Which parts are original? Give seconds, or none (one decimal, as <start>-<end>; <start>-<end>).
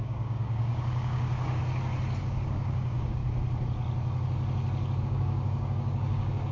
1.6-2.2; 3.2-5.0